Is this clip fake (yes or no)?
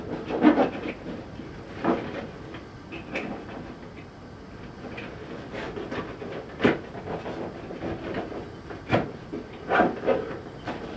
no